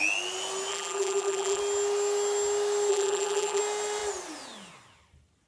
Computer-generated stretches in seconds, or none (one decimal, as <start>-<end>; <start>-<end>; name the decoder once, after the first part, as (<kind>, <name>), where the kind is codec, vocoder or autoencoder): 0.7-1.6 (vocoder, BigVGAN v2); 2.9-3.6